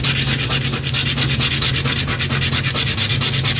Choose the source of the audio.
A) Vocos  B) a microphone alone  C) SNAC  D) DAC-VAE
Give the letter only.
B